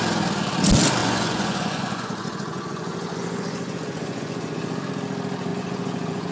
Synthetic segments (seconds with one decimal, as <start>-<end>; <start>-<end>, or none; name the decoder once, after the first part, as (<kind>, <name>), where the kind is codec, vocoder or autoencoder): 1.0-4.8 (vocoder, Vocos); 5.5-6.3